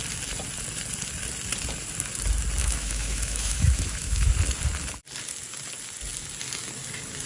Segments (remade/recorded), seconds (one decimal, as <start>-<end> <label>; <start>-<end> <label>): 0.0-2.6 recorded; 2.6-4.3 remade; 4.3-7.3 recorded